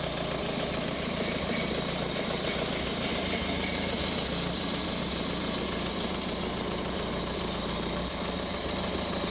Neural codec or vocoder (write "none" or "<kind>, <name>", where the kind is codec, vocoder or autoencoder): none